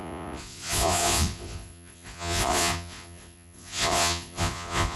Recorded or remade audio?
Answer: remade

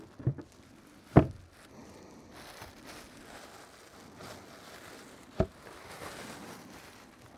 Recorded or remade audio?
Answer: recorded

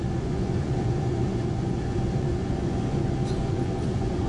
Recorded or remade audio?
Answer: remade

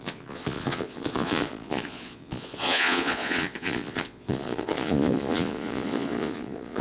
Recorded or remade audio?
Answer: remade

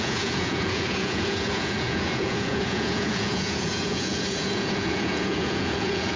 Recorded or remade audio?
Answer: remade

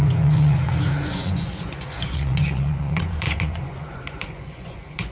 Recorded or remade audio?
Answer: remade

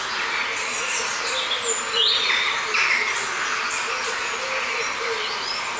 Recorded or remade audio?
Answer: recorded